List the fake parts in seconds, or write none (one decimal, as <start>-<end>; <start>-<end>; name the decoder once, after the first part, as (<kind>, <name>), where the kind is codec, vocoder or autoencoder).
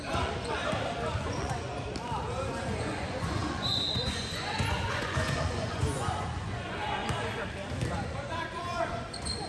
0.0-0.6 (vocoder, Vocos); 1.2-1.7; 2.6-7.0; 7.9-9.5